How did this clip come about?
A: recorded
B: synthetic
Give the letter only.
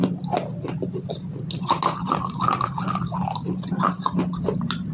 A